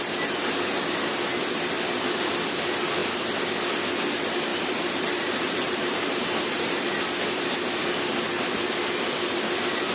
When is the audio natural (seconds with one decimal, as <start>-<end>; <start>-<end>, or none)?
0.0-4.5; 6.9-9.9